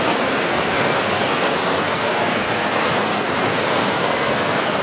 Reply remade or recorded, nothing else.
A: remade